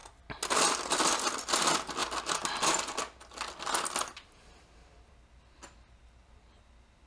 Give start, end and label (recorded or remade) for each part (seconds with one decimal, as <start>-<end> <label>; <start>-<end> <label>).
0.0-7.1 recorded